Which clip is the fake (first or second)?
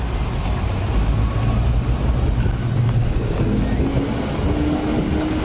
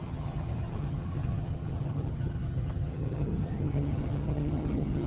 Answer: second